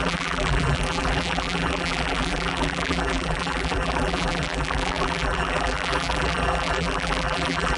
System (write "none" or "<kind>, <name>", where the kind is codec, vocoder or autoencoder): vocoder, BigVGAN v2